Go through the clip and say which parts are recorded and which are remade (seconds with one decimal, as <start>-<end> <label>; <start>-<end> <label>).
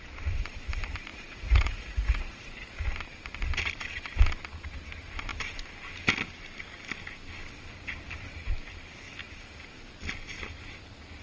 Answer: 0.0-1.1 recorded; 1.1-2.8 remade; 2.8-11.2 recorded